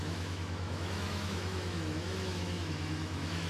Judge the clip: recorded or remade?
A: remade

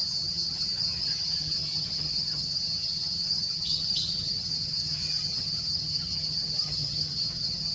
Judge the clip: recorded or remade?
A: remade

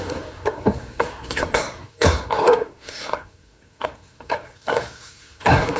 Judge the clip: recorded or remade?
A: remade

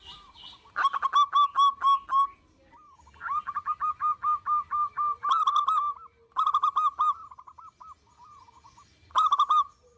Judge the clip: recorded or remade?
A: recorded